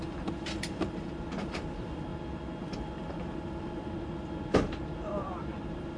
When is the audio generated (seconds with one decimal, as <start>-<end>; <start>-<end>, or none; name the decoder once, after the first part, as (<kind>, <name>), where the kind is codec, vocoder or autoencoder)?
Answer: 0.0-6.0 (vocoder, BigVGAN v2)